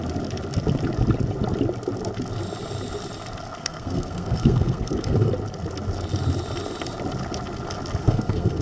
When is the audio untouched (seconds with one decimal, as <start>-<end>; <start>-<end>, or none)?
0.0-3.6; 5.3-8.0